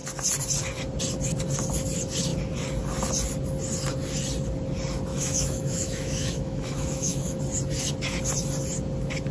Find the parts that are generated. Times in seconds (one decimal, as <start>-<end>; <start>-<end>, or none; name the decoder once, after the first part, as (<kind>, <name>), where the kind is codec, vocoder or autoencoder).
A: 5.1-7.4 (autoencoder, DAC-VAE)